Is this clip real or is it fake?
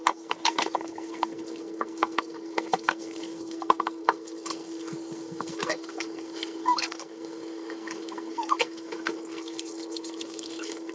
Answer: fake